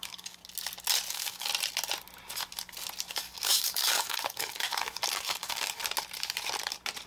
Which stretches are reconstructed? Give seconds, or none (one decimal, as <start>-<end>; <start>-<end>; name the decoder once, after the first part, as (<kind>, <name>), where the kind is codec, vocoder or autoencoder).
0.0-0.4 (codec, DAC); 1.1-1.5; 3.1-5.8